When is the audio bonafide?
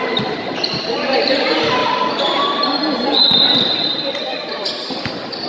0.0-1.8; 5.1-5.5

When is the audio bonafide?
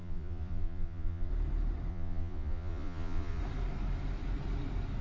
1.3-1.9; 3.4-5.0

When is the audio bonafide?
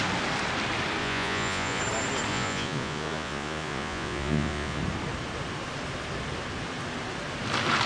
0.0-1.0; 1.8-2.3; 4.8-7.9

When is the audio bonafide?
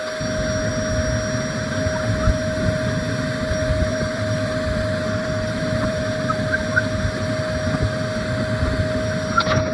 0.0-3.9; 6.0-9.7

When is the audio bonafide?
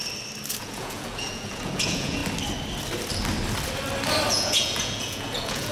0.0-0.6; 2.2-4.3